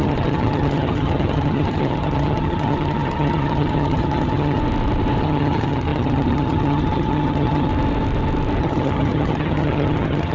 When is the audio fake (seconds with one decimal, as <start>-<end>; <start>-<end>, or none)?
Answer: 0.0-4.6; 5.2-7.7; 8.6-10.3